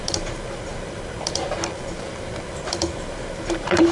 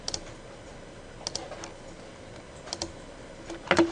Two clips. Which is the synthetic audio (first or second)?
first